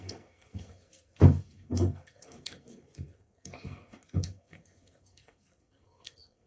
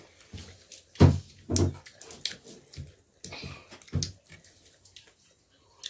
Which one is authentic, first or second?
second